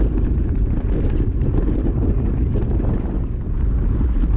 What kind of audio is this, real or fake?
fake